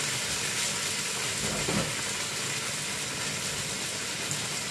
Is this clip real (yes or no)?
yes